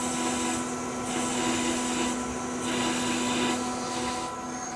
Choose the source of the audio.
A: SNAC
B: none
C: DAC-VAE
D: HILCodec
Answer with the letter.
B